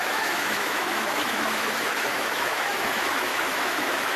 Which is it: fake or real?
fake